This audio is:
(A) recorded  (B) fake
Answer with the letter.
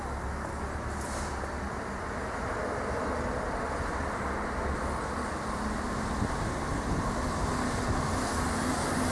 A